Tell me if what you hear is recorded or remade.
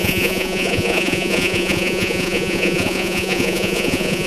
remade